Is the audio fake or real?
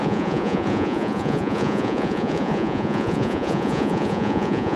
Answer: fake